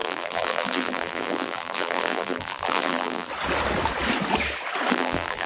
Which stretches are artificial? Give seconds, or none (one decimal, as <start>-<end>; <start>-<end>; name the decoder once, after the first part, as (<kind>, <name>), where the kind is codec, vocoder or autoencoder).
0.0-3.3 (vocoder, BigVGAN v2); 4.9-5.5